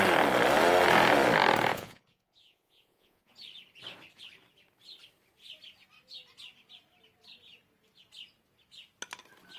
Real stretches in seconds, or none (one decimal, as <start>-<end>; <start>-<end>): 0.0-1.7; 3.3-9.6